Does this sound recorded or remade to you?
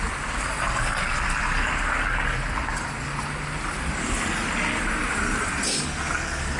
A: recorded